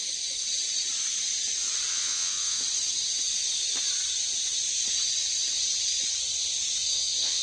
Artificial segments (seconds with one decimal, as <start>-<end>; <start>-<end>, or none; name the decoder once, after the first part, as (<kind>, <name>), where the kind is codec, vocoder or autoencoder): 1.9-2.6 (vocoder, WaveNeXt); 6.8-7.4